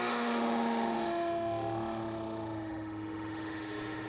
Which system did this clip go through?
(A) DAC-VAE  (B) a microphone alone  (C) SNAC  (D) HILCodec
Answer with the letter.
A